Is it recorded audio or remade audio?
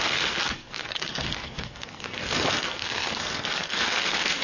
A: remade